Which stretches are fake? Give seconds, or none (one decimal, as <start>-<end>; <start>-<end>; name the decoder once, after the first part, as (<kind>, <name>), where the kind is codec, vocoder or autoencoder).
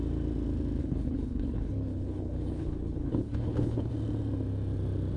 0.8-3.9 (codec, HILCodec)